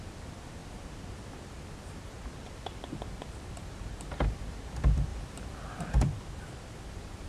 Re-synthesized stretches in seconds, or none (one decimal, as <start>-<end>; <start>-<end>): 0.0-0.6; 3.5-7.3

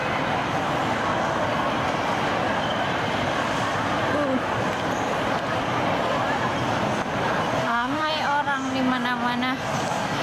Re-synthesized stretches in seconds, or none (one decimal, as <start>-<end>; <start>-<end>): 7.6-8.1

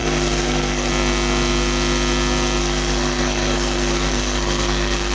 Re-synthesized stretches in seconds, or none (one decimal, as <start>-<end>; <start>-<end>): 0.0-0.9; 2.6-5.1

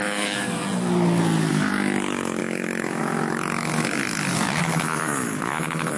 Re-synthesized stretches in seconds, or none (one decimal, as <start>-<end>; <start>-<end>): 0.0-0.6; 1.5-4.0; 4.6-6.0